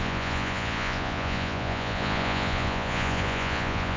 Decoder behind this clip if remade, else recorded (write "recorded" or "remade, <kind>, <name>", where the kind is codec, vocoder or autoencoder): remade, vocoder, Vocos